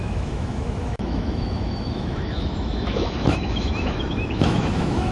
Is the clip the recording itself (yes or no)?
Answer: no